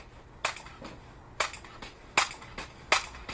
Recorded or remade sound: recorded